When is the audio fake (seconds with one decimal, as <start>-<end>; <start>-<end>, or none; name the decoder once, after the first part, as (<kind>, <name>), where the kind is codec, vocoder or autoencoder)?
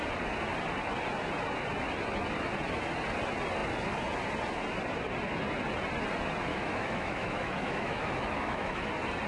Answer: 6.5-8.9 (autoencoder, DAC-VAE)